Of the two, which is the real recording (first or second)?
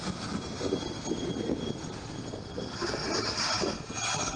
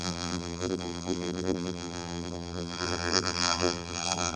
first